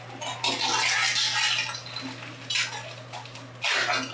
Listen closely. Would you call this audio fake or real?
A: real